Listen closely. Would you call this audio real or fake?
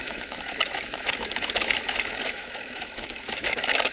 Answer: fake